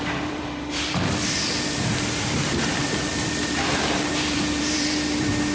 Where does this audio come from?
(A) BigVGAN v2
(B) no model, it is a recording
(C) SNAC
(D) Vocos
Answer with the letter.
A